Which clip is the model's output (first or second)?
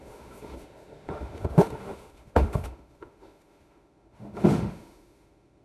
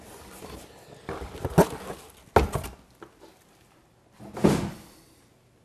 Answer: first